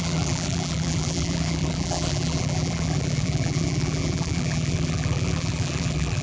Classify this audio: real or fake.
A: fake